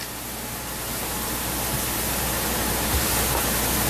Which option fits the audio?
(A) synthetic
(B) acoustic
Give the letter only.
B